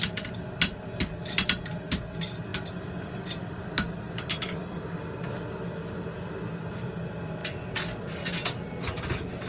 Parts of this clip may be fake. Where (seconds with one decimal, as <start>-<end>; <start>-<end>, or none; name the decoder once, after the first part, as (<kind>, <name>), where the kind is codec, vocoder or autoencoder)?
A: none